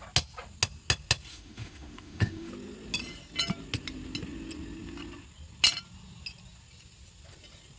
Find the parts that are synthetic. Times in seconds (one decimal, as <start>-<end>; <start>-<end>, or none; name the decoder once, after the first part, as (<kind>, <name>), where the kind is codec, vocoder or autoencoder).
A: 1.3-2.5 (autoencoder, DAC-VAE)